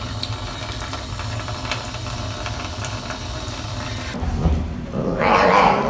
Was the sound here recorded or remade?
remade